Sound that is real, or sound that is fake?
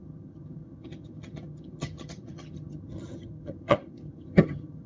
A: fake